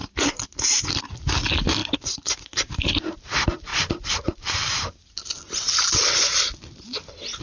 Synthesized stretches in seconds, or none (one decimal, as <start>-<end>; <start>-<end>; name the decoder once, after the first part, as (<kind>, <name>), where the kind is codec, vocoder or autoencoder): 0.0-1.0 (vocoder, BigVGAN v2); 1.8-2.9; 3.7-6.1